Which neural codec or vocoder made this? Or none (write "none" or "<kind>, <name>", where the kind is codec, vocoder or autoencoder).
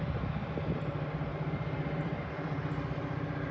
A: vocoder, BigVGAN v2